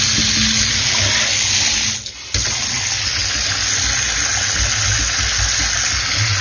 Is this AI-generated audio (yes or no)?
no